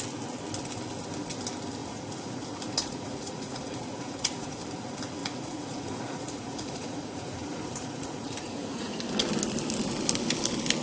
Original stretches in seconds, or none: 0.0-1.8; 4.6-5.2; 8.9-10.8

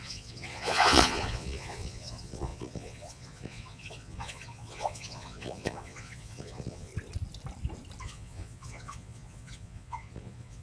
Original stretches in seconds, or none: 6.9-8.0

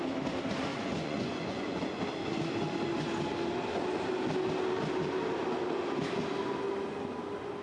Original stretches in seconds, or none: 0.0-0.7; 2.0-7.6

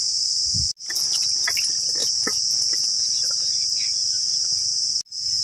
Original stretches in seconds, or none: 0.0-2.0; 3.2-5.4

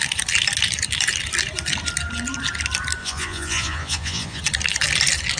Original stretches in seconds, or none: 0.0-3.0; 4.4-5.4

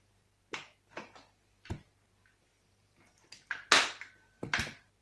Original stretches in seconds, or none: 0.0-5.0